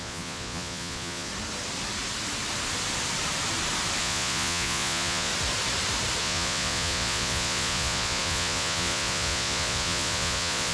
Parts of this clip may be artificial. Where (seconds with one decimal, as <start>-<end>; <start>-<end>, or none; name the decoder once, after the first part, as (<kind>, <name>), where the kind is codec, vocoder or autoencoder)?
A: 0.0-1.3 (vocoder, Vocos); 4.0-5.3; 6.2-10.7